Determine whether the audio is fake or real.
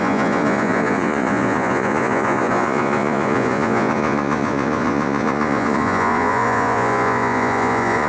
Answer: fake